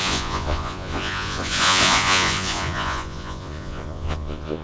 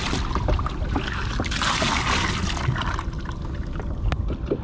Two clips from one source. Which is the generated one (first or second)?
first